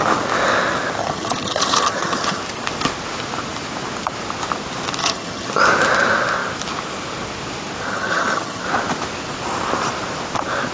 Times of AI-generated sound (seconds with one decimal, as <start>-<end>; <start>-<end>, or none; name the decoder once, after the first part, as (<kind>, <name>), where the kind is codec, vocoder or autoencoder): 1.0-2.4 (vocoder, HiFi-GAN); 5.0-5.5; 7.9-8.6